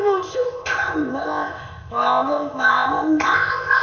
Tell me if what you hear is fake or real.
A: fake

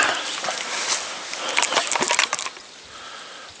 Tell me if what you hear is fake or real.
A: real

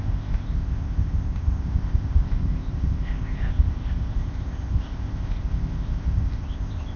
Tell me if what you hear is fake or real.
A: fake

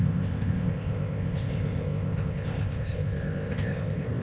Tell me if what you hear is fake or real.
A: fake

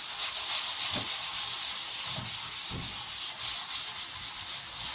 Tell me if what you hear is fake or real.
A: real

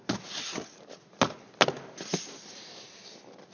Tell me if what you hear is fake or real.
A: real